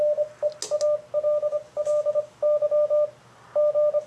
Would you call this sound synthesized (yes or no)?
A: no